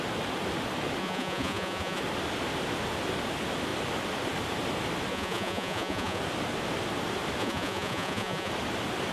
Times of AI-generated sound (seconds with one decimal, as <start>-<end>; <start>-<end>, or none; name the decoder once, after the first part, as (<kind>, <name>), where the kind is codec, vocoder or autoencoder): 1.0-2.0 (vocoder, Vocos); 5.1-6.2; 7.4-8.5